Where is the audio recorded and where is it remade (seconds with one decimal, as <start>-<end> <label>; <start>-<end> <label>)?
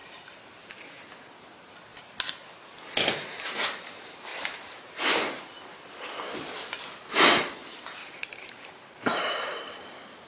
0.0-0.8 remade; 0.8-4.3 recorded; 4.3-5.4 remade; 5.4-8.0 recorded; 8.0-9.6 remade; 9.6-10.3 recorded